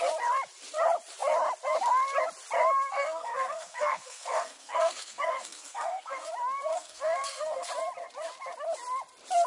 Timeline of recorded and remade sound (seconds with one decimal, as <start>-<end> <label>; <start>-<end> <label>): 0.0-2.9 recorded; 2.9-6.3 remade; 6.3-6.7 recorded; 6.7-7.7 remade; 7.7-9.5 recorded